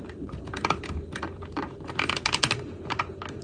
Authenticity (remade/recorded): remade